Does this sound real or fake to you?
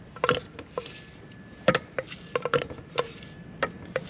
real